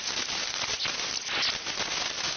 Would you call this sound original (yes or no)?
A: yes